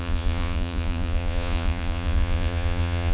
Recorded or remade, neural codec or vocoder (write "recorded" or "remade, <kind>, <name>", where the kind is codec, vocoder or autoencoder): remade, vocoder, Vocos